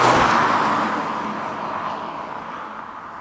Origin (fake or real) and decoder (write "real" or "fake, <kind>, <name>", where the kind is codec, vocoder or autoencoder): real